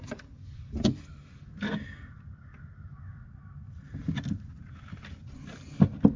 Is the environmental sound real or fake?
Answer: real